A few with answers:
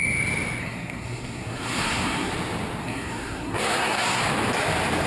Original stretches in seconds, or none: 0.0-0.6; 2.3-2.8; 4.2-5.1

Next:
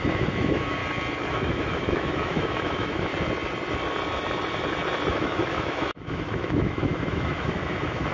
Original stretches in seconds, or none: 0.8-1.3; 3.1-5.1

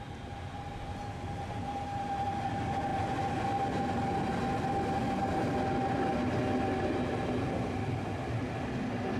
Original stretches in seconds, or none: 0.0-9.2

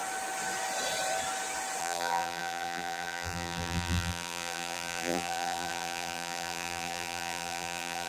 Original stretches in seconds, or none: 0.0-1.8

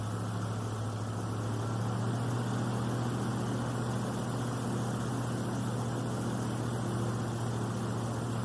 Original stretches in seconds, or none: 0.0-8.4

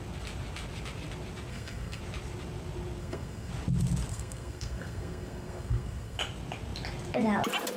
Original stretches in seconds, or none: 0.0-1.5; 2.0-3.0; 3.5-4.1; 6.2-7.8

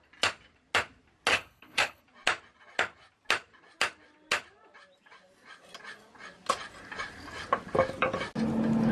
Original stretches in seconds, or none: 0.0-1.3; 2.0-8.9

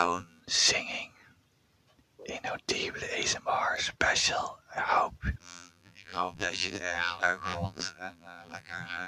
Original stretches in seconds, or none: 0.4-5.4